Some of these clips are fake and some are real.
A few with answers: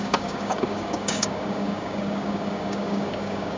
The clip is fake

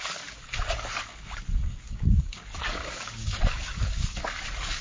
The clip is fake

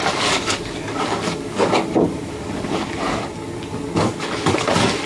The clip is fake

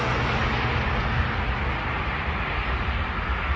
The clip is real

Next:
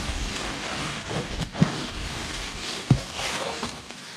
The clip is fake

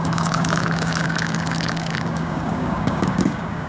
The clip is fake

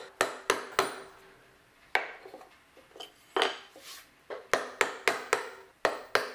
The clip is real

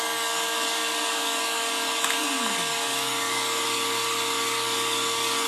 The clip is fake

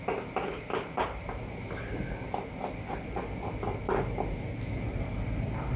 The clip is real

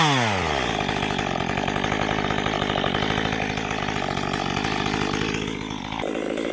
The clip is real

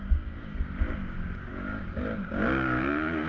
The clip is fake